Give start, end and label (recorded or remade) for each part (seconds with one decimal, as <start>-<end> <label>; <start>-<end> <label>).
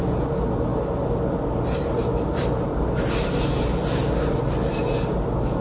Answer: 0.0-5.6 recorded